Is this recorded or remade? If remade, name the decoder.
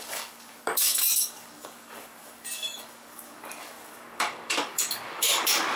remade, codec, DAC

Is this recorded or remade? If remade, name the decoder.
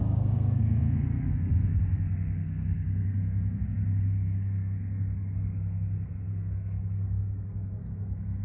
remade, codec, SNAC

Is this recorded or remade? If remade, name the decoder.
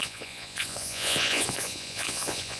remade, vocoder, Vocos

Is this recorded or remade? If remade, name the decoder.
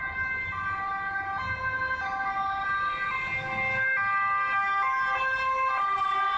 recorded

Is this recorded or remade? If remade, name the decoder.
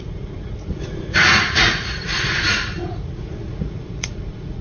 remade, vocoder, Vocos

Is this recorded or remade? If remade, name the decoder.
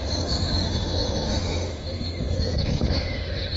remade, autoencoder, DAC-VAE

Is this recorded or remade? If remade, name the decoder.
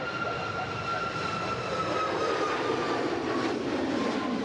recorded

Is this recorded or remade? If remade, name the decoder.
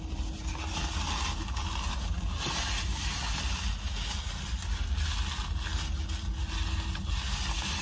recorded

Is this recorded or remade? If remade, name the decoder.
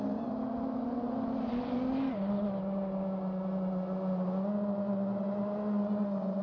recorded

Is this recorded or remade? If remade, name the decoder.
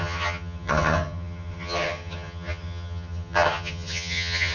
remade, vocoder, HiFi-GAN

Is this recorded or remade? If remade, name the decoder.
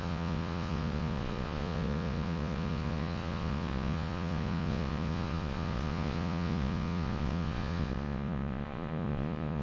remade, vocoder, Vocos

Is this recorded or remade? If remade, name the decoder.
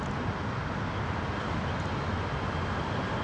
recorded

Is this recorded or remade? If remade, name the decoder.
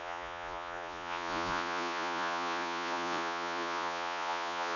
remade, vocoder, Vocos